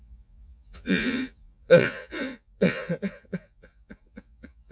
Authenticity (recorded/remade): remade